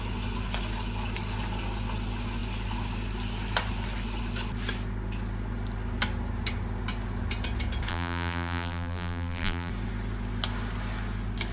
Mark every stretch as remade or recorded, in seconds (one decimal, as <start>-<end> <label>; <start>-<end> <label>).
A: 0.0-7.9 recorded; 7.9-9.7 remade; 9.7-11.5 recorded